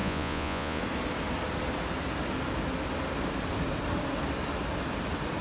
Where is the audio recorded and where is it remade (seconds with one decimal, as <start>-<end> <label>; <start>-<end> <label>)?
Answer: 0.0-0.8 remade; 0.8-5.4 recorded